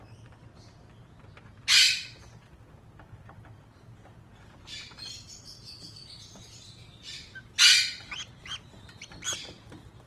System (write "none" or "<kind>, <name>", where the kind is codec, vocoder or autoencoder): none